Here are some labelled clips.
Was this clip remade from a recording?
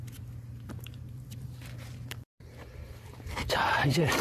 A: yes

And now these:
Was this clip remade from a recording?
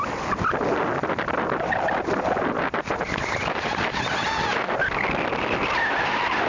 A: no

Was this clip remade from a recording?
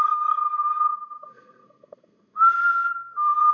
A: yes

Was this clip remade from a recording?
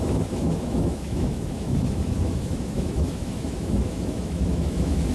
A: yes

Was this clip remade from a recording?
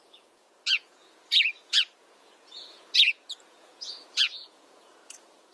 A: yes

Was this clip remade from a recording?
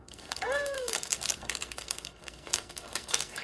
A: yes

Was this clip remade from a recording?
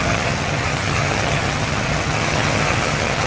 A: yes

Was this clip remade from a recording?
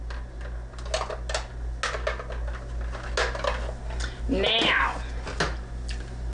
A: no